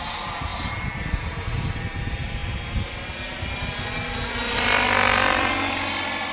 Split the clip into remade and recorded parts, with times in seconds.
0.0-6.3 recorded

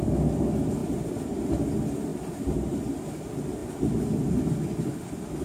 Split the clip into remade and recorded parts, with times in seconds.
0.0-0.8 recorded; 0.8-1.5 remade; 1.5-2.1 recorded; 2.1-3.0 remade; 3.0-5.4 recorded

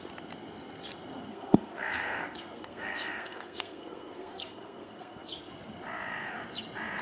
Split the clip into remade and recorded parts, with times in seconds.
0.0-1.3 recorded; 1.3-5.5 remade; 5.5-7.0 recorded

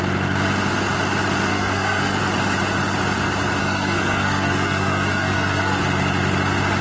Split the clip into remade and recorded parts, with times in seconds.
0.0-1.5 recorded; 1.5-2.2 remade; 2.2-3.6 recorded; 3.6-5.8 remade; 5.8-6.8 recorded

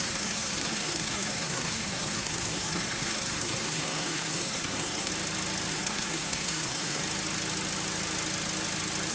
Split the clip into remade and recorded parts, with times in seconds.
0.0-5.1 remade; 5.1-5.7 recorded; 5.7-7.0 remade; 7.0-9.1 recorded

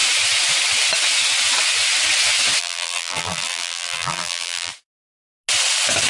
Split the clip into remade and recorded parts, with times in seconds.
0.0-2.6 recorded; 2.6-4.7 remade; 4.7-6.1 recorded